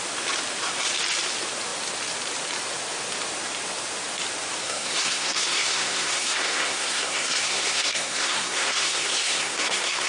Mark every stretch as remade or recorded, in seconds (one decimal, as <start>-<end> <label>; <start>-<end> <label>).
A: 0.0-4.6 recorded; 4.6-10.1 remade